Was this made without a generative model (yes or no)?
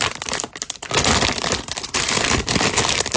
yes